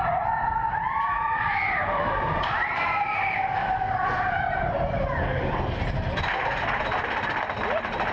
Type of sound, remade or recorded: recorded